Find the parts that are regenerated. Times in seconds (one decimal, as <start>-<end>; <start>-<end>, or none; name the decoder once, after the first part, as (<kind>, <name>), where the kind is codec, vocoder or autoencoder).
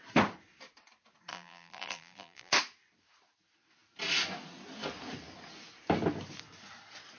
1.3-2.5 (vocoder, BigVGAN v2)